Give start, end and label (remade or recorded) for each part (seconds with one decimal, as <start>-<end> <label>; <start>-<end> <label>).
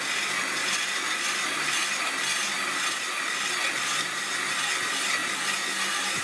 0.0-0.6 recorded; 0.6-2.2 remade; 2.2-3.6 recorded; 3.6-4.3 remade; 4.3-6.2 recorded